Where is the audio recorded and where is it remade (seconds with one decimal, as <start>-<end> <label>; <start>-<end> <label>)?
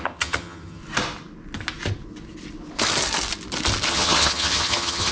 0.0-0.8 remade; 0.8-3.9 recorded; 3.9-5.1 remade